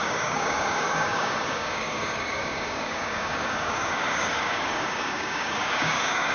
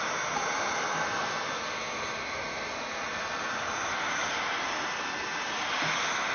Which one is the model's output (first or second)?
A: first